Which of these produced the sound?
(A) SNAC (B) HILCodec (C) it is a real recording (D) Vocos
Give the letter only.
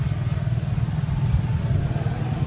C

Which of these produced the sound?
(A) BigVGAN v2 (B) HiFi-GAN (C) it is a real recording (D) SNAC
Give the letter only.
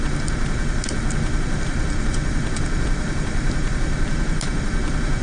A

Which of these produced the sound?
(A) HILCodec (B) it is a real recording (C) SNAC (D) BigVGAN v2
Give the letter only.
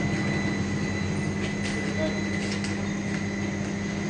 B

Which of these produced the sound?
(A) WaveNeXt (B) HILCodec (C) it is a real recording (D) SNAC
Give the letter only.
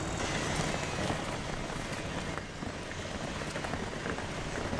C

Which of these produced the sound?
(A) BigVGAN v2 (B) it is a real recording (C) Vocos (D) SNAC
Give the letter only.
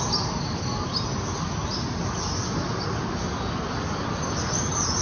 B